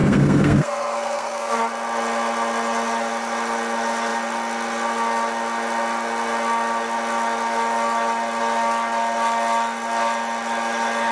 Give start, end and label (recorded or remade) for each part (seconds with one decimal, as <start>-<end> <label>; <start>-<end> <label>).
0.0-1.6 remade; 1.6-11.1 recorded